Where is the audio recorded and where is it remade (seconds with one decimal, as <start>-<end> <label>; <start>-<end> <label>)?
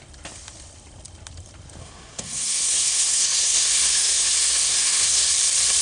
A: 0.0-1.8 recorded; 1.8-5.3 remade; 5.3-5.8 recorded